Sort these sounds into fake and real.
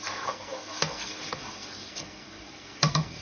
fake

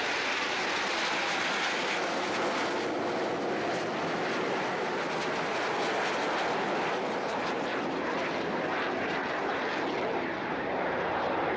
real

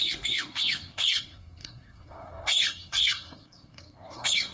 fake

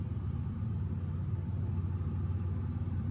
real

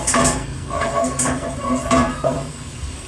fake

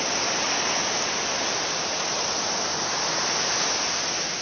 real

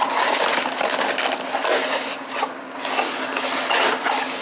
real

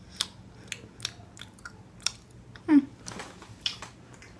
real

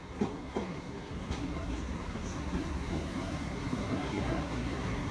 fake